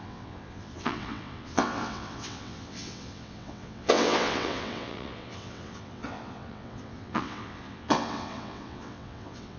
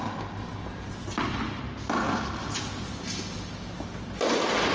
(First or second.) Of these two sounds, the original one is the second